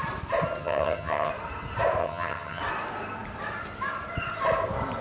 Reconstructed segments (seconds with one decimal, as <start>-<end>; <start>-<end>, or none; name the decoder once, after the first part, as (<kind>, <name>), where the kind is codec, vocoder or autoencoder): 0.6-1.3 (vocoder, HiFi-GAN); 2.0-2.6